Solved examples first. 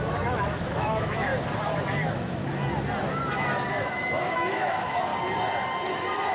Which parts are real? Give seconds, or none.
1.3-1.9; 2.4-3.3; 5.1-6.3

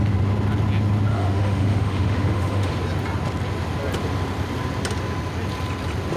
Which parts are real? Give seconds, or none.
0.0-1.1; 2.7-6.2

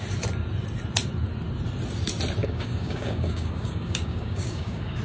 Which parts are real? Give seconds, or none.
0.0-2.4

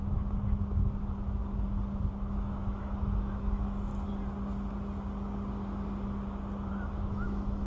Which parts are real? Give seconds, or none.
1.4-2.1; 3.9-6.7

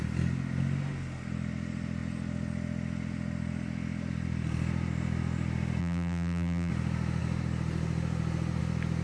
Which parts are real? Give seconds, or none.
0.0-5.8; 6.7-9.0